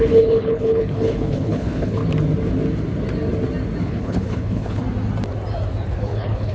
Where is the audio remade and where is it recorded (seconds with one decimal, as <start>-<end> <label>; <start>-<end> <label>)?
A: 0.0-2.0 remade; 2.0-3.8 recorded; 3.8-4.8 remade; 4.8-5.9 recorded; 5.9-6.5 remade